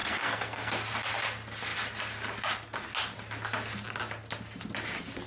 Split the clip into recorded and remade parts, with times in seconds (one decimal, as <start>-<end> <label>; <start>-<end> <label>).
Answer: 0.0-0.7 remade; 0.7-5.3 recorded